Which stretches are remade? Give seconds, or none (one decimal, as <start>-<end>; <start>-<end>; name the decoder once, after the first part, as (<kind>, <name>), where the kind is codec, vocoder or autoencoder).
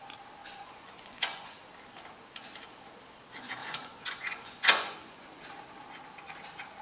0.4-1.7 (vocoder, Vocos); 3.6-5.4